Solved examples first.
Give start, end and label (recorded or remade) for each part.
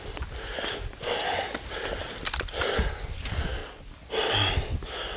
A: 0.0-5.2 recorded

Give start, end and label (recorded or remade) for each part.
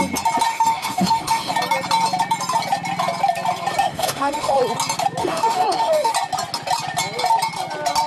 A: 0.0-0.5 recorded; 0.5-1.5 remade; 1.5-3.9 recorded; 3.9-4.6 remade; 4.6-5.2 recorded; 5.2-6.1 remade; 6.1-8.1 recorded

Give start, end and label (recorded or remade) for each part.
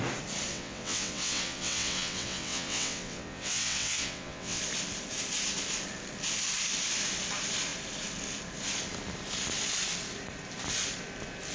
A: 0.0-0.5 recorded; 0.5-4.6 remade; 4.6-11.5 recorded